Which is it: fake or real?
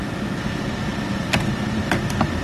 real